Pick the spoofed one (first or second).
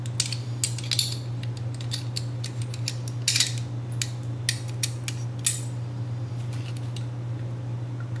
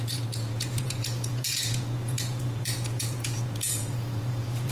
second